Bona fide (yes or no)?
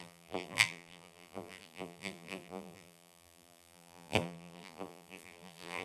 no